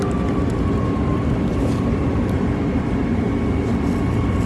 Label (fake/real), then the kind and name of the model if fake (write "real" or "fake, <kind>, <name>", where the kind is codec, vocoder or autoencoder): real